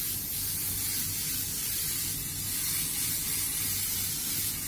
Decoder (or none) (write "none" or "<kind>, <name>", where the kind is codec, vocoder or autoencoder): none